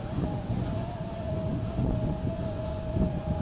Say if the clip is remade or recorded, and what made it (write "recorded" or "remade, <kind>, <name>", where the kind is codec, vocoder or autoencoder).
remade, vocoder, Vocos